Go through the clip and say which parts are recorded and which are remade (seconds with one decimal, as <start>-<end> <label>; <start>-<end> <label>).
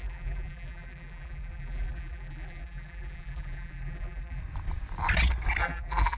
0.0-4.4 remade; 4.4-5.6 recorded; 5.6-6.2 remade